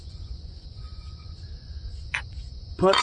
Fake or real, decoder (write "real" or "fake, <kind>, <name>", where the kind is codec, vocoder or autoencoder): fake, vocoder, Vocos